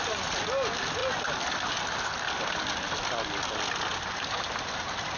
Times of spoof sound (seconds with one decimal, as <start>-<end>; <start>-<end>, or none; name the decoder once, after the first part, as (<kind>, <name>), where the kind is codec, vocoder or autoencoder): 3.9-5.2 (vocoder, BigVGAN v2)